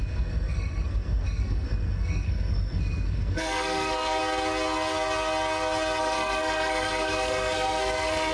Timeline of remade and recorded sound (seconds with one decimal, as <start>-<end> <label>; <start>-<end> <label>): 0.0-4.2 remade; 4.2-6.0 recorded; 6.0-8.3 remade